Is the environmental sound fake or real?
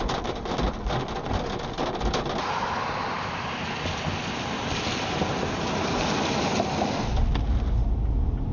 real